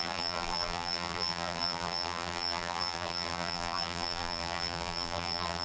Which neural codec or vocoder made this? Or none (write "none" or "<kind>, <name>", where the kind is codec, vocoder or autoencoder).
vocoder, BigVGAN v2